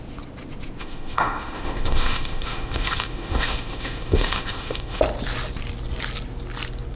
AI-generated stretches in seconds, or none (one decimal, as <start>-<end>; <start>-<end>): 0.8-5.0

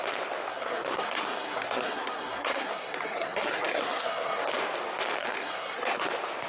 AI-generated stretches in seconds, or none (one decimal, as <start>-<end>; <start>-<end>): 0.5-4.4; 5.2-6.1